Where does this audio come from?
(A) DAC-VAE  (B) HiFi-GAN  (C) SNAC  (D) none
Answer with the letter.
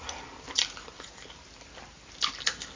D